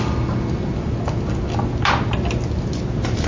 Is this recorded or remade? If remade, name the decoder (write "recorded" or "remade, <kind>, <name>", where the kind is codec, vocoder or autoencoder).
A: recorded